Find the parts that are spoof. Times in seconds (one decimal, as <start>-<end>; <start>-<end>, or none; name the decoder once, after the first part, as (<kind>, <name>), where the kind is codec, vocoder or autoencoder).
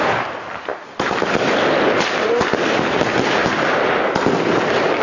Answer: 0.7-1.3 (vocoder, BigVGAN v2)